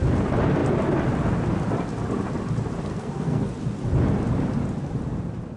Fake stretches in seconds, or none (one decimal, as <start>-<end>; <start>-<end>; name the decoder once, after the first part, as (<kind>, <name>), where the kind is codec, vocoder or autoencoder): 2.9-3.5 (codec, SNAC)